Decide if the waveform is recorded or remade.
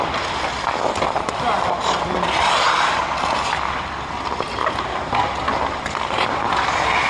recorded